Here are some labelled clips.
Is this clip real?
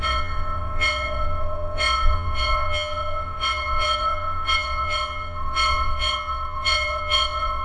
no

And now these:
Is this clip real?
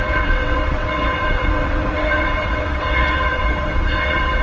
no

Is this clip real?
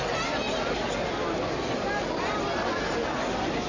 yes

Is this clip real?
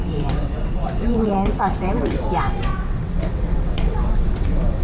no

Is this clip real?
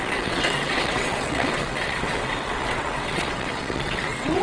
no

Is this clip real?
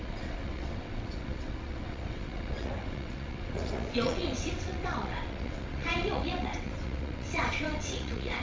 no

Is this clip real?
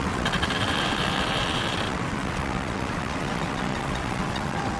no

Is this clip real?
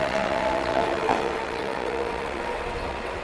no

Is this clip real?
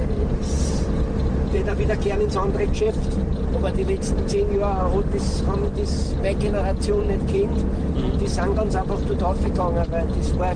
yes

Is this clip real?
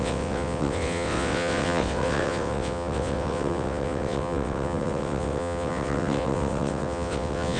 no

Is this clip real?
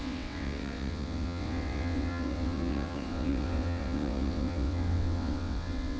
no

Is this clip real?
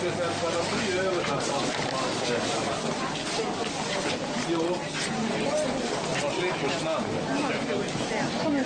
yes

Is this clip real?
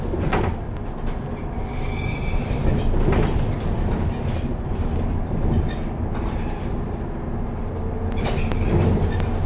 yes